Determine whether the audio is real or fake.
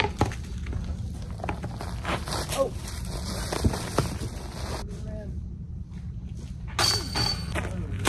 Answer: real